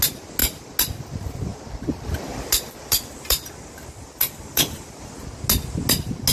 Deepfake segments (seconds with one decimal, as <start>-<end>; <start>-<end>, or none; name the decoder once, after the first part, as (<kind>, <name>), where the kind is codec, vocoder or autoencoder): 1.5-5.1 (vocoder, BigVGAN v2)